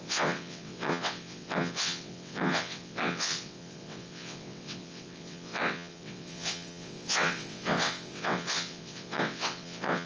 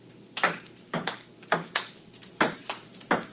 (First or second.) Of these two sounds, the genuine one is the second